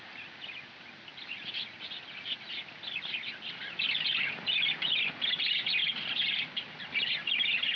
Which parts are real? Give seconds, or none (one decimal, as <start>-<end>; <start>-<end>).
0.0-5.8; 6.7-7.8

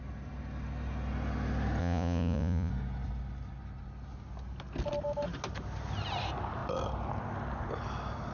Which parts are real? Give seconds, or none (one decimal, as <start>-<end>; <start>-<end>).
0.0-1.8; 2.7-8.3

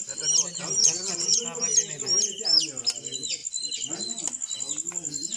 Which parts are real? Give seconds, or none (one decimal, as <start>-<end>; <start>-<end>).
0.0-0.8; 1.4-5.4

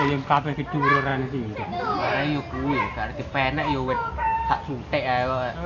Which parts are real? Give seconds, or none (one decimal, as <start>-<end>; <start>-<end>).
0.0-5.7

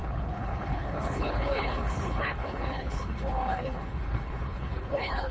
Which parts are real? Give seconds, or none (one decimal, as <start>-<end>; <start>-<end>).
none